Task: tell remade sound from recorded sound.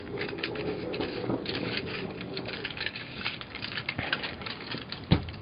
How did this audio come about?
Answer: remade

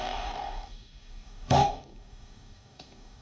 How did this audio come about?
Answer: remade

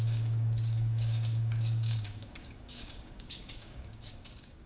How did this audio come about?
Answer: remade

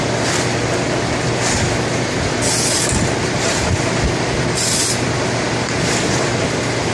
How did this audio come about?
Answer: recorded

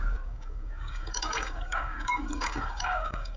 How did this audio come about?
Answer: remade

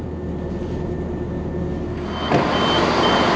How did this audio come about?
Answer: recorded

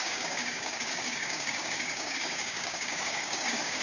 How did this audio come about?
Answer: remade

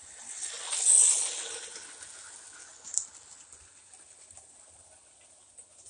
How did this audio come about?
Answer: recorded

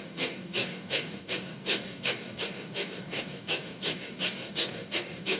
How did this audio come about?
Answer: remade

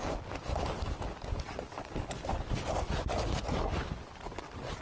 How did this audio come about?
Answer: recorded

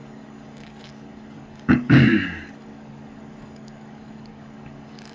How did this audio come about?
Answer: remade